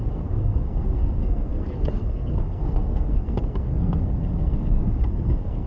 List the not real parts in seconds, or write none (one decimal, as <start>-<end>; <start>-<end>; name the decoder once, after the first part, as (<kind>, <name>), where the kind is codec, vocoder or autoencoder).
0.0-5.7 (codec, SNAC)